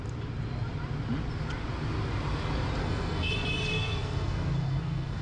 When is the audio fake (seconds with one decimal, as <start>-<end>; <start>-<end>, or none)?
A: 2.8-3.3; 3.7-5.2

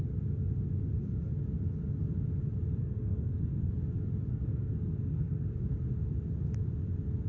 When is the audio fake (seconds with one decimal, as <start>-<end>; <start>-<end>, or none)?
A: 2.8-3.7; 4.3-5.5

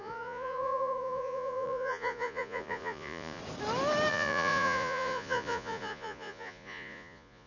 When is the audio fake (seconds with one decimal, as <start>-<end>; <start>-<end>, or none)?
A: 0.0-3.4; 4.1-7.5